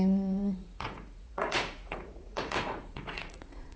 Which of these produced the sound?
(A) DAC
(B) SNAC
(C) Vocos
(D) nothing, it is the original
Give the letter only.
C